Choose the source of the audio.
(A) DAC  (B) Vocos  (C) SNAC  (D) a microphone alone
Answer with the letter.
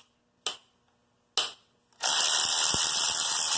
D